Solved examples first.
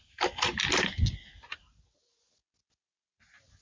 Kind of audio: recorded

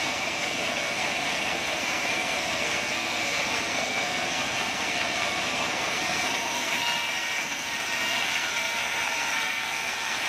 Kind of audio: remade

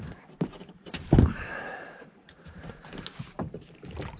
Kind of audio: remade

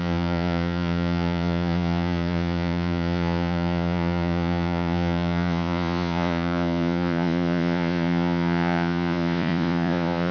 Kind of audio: remade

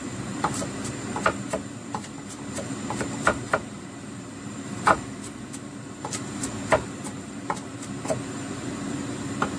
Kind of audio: remade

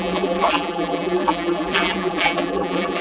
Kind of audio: remade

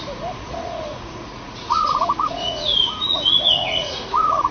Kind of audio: remade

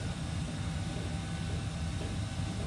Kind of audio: recorded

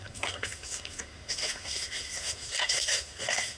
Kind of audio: remade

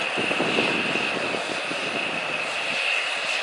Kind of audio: recorded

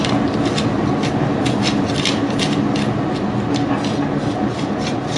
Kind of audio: recorded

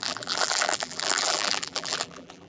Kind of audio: remade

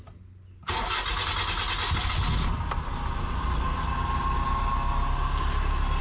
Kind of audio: recorded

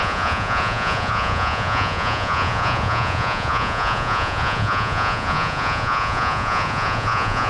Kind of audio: remade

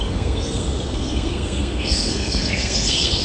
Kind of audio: remade